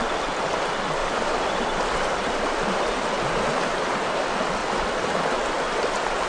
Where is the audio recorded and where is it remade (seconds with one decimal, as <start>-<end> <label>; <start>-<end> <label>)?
0.0-1.0 recorded; 1.0-3.1 remade; 3.1-4.6 recorded; 4.6-5.3 remade; 5.3-6.3 recorded

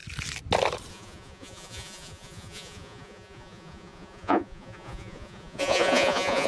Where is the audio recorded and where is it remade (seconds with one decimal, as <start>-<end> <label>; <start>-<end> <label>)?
0.0-0.9 recorded; 0.9-6.5 remade

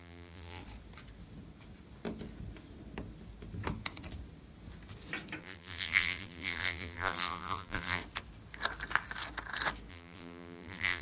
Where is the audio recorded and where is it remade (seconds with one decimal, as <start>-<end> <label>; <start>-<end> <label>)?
0.0-0.6 remade; 0.6-5.4 recorded; 5.4-8.0 remade; 8.0-9.9 recorded; 9.9-11.0 remade

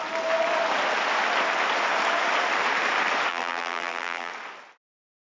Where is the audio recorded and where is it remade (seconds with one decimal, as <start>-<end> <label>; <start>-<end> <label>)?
0.0-3.3 recorded; 3.3-4.3 remade; 4.3-5.3 recorded

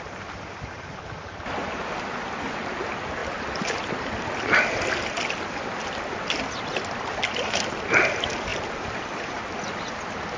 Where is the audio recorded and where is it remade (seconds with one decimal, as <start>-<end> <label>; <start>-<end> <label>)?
0.0-3.2 recorded; 3.2-4.1 remade; 4.1-8.5 recorded; 8.5-9.5 remade; 9.5-10.4 recorded

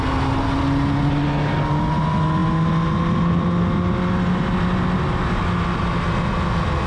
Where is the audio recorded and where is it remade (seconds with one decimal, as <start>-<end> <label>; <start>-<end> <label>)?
0.0-6.9 recorded

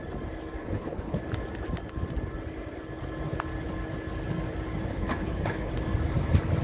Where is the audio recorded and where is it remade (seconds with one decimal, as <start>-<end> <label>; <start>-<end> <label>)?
0.0-0.6 recorded; 0.6-1.2 remade; 1.2-4.9 recorded; 4.9-5.7 remade; 5.7-6.6 recorded